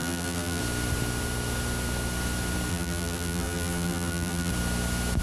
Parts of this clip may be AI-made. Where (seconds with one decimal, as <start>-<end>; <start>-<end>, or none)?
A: 0.0-0.6; 2.7-4.5